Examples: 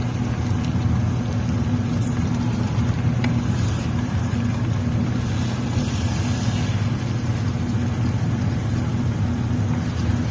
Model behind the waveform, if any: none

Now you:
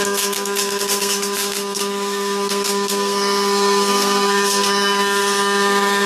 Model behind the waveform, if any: codec, SNAC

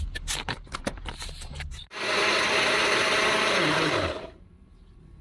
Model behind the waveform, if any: vocoder, BigVGAN v2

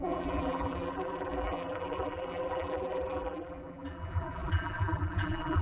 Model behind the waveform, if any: vocoder, BigVGAN v2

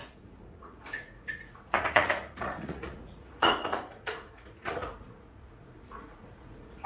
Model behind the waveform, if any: vocoder, Vocos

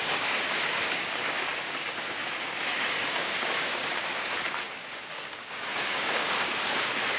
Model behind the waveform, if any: codec, DAC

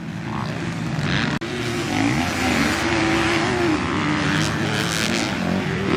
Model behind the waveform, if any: none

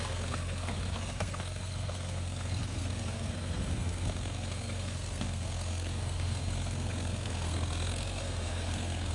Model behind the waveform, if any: codec, SNAC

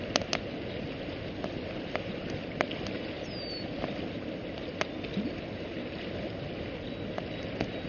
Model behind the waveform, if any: none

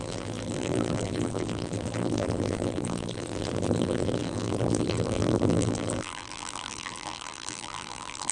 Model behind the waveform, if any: vocoder, BigVGAN v2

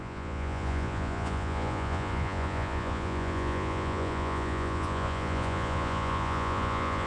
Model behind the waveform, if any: vocoder, Vocos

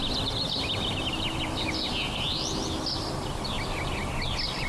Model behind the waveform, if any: vocoder, BigVGAN v2